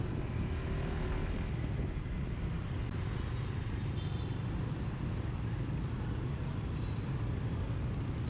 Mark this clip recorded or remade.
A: recorded